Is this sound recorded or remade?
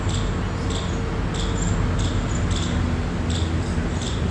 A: recorded